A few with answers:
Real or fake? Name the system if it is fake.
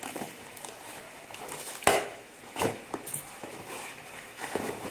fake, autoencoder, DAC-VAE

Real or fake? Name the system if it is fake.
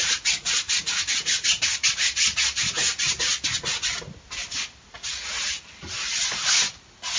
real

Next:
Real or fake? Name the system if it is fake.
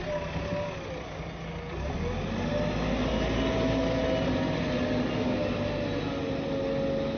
real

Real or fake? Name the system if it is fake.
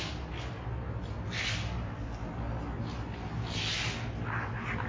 real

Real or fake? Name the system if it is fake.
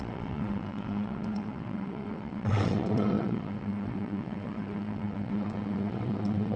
fake, vocoder, WaveNeXt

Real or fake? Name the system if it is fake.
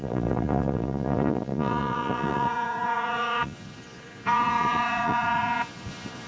fake, vocoder, Vocos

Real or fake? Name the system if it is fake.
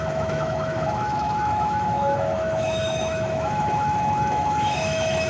fake, autoencoder, DAC-VAE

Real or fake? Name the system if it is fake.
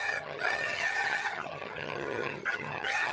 fake, vocoder, HiFi-GAN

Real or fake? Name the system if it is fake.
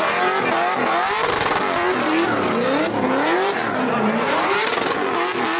real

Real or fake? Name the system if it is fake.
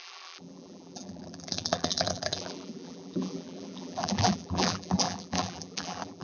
fake, vocoder, BigVGAN v2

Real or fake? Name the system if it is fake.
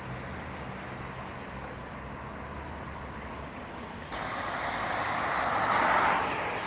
real